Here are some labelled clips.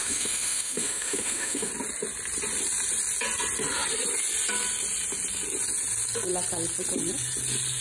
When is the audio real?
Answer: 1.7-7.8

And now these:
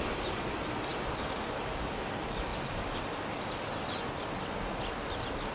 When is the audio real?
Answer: 0.0-5.5

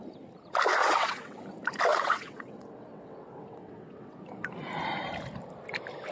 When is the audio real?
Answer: 0.0-0.8; 1.4-1.9; 4.2-6.1

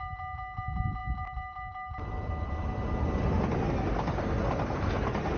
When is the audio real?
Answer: 0.0-5.4